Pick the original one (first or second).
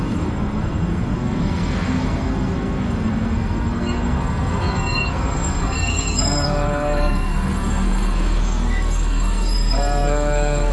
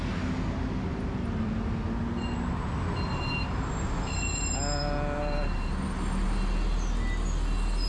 second